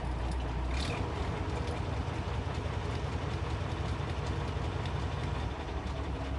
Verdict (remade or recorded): recorded